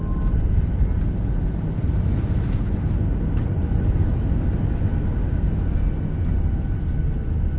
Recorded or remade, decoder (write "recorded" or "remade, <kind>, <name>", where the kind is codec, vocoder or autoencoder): recorded